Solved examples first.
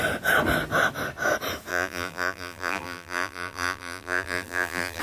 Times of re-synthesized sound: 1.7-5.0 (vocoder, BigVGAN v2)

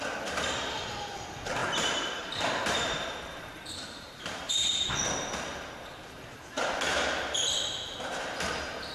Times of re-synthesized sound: 1.6-4.9 (vocoder, BigVGAN v2)

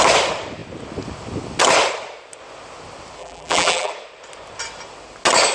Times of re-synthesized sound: 3.2-3.9 (vocoder, BigVGAN v2)

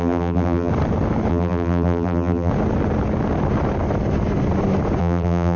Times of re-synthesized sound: 0.0-0.7 (vocoder, BigVGAN v2); 1.3-2.5; 5.0-5.6